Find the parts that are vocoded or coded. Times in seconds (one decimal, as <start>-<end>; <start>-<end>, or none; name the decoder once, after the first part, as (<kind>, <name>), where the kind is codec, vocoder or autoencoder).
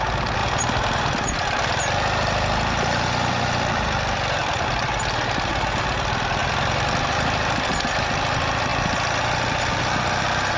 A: none